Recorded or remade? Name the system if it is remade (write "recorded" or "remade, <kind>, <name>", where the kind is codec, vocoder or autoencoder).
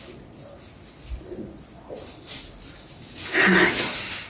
recorded